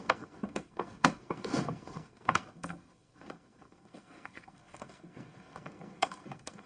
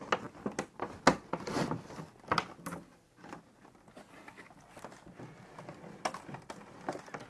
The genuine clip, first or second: second